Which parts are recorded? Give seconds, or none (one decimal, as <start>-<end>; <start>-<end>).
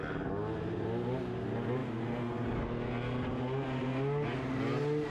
0.0-5.1